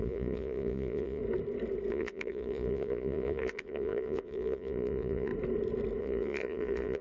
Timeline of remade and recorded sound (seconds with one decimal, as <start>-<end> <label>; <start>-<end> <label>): 0.0-1.2 remade; 1.2-1.9 recorded; 1.9-5.3 remade; 5.3-6.0 recorded; 6.0-7.0 remade